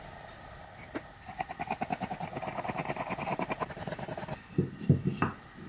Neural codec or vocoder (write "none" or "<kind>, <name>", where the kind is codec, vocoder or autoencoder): none